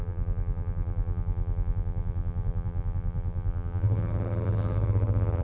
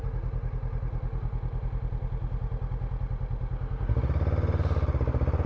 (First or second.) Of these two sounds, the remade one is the first